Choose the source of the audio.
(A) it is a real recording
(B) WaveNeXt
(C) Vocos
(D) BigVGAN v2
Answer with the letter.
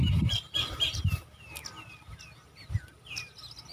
A